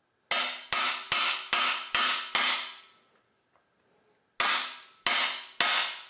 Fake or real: real